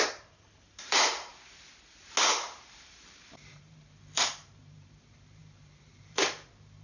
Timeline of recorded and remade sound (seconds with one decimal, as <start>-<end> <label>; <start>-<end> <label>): 0.0-1.3 remade; 1.3-2.2 recorded; 2.2-6.8 remade